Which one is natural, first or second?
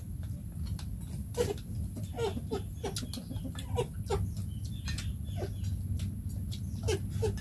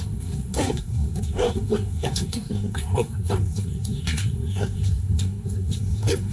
first